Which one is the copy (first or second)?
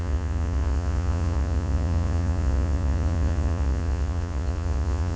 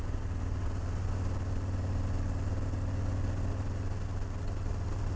first